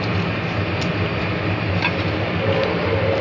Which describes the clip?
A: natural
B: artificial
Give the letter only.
A